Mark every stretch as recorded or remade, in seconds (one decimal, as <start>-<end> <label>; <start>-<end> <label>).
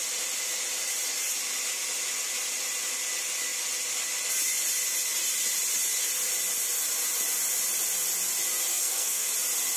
0.0-8.7 recorded; 8.7-9.3 remade; 9.3-9.8 recorded